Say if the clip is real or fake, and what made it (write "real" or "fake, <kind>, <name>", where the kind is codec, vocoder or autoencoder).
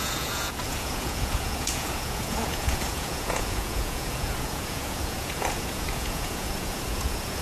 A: fake, vocoder, Vocos